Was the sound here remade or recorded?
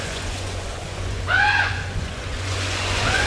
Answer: remade